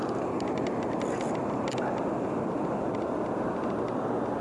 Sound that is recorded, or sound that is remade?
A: recorded